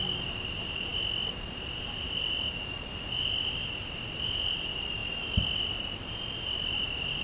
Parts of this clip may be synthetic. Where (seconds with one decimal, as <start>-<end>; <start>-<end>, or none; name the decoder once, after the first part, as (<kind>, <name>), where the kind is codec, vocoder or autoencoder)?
none